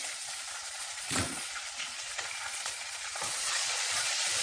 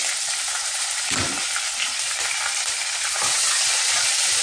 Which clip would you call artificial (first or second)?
first